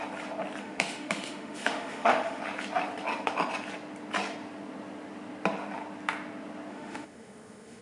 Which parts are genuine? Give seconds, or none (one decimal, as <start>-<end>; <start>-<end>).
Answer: 0.0-0.6; 2.4-6.7